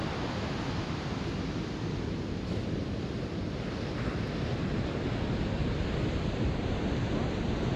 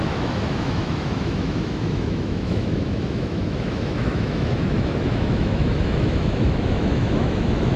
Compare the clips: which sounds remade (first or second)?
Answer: second